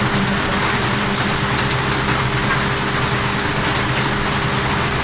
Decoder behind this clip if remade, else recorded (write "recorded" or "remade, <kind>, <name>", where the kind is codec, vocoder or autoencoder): recorded